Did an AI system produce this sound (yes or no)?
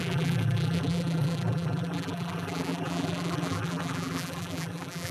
yes